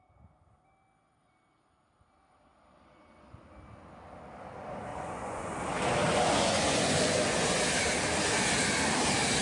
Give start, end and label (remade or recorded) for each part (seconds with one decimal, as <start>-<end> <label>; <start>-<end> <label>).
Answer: 0.0-4.9 recorded; 4.9-5.6 remade; 5.6-6.1 recorded; 6.1-7.6 remade; 7.6-9.4 recorded